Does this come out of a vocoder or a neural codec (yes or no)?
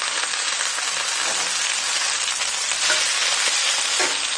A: no